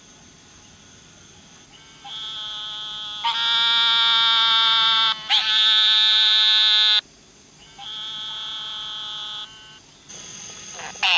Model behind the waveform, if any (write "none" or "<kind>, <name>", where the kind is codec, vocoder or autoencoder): none